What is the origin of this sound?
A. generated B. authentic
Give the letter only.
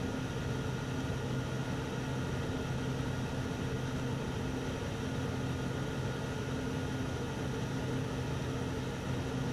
B